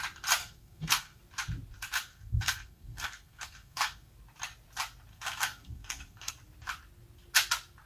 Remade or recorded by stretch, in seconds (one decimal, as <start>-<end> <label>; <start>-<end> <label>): 0.0-0.4 recorded; 0.4-1.2 remade; 1.2-2.1 recorded; 2.1-4.1 remade; 4.1-5.1 recorded; 5.1-6.3 remade; 6.3-7.9 recorded